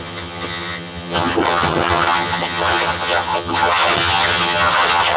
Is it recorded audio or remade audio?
remade